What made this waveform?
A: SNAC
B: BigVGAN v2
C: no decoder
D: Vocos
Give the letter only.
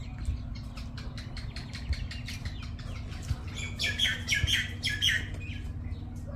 C